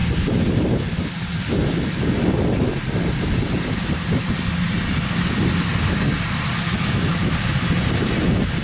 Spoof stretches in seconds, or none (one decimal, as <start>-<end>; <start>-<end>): none